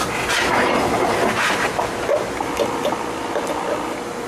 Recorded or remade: recorded